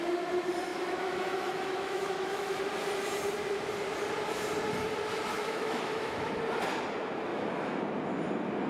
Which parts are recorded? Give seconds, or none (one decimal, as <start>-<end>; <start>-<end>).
0.0-0.7; 2.6-5.3; 6.3-7.3; 7.8-8.7